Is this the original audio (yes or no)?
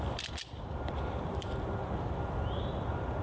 no